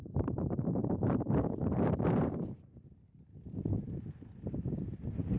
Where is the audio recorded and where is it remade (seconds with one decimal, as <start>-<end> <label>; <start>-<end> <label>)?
0.0-3.2 remade; 3.2-5.4 recorded